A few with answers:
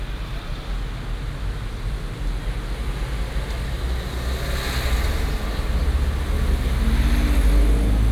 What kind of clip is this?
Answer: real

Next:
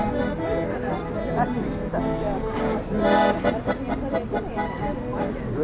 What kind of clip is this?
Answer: real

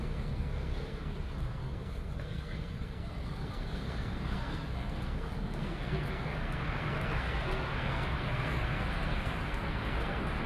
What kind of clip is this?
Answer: fake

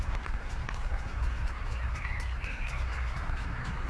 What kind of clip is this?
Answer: fake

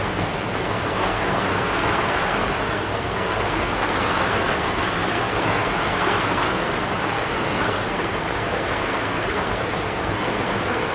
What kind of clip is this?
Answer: fake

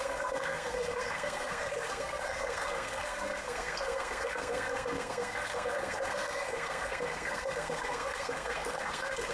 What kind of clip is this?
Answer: fake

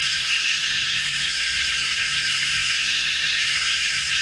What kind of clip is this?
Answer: fake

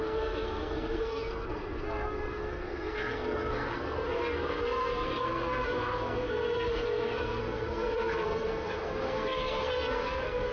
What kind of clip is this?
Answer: fake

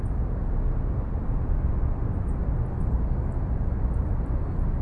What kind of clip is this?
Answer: real